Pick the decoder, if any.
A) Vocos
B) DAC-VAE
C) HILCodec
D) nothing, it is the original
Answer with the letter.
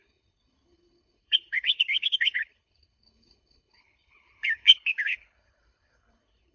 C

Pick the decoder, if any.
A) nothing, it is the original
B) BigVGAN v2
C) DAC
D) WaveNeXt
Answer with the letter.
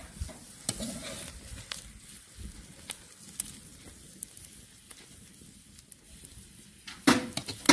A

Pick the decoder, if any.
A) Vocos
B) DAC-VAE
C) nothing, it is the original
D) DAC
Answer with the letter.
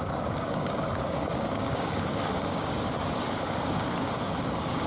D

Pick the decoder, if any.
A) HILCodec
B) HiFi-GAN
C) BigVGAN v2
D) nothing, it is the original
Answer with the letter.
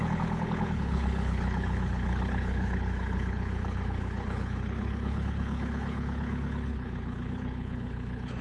A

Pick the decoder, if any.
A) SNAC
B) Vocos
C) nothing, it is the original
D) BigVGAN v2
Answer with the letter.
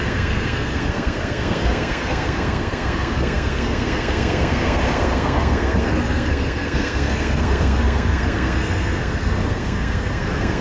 A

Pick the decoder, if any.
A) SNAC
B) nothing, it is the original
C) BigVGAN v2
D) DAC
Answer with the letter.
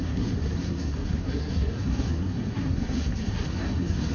A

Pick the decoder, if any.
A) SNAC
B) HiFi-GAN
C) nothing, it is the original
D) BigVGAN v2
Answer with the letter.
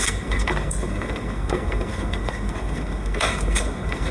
A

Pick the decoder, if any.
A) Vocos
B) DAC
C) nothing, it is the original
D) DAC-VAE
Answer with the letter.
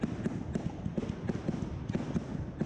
C